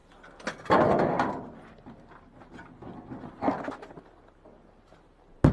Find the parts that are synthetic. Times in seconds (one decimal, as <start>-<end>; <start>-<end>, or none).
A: none